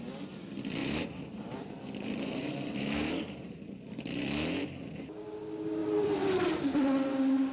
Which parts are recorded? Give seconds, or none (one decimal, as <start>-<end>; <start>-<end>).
0.0-0.8; 3.6-5.8; 6.5-7.5